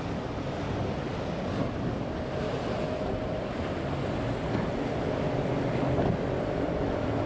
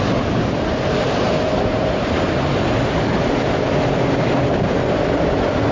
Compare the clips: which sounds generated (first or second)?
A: second